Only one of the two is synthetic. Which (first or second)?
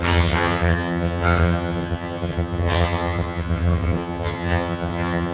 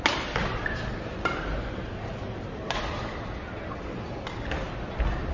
first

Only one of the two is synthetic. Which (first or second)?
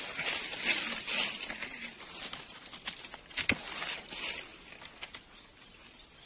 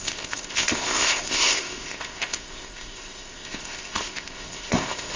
second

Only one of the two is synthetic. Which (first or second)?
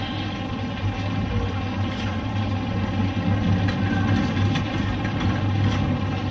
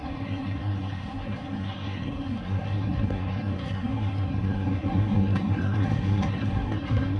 second